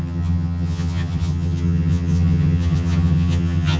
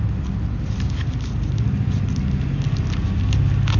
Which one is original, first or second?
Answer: second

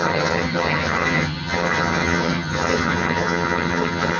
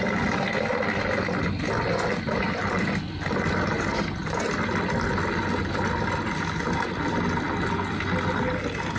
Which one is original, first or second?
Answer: second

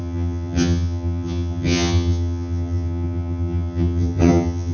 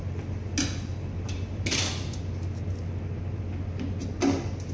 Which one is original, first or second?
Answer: second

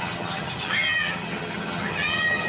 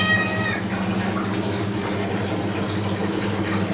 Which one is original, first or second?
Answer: second